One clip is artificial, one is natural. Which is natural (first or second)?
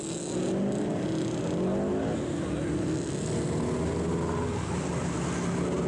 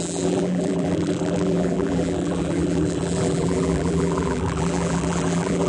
first